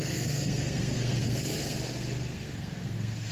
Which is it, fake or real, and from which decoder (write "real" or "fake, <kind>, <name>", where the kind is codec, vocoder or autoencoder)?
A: fake, codec, SNAC